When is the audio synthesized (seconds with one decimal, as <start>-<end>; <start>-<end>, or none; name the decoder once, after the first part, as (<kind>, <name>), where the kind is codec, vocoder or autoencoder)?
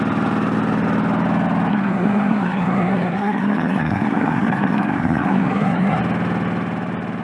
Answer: 1.7-6.0 (codec, SNAC)